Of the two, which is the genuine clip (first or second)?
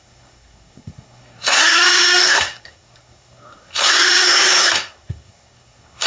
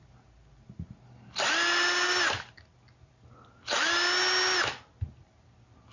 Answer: second